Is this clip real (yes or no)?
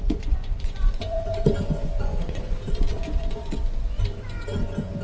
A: no